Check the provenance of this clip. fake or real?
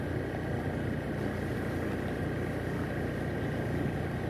real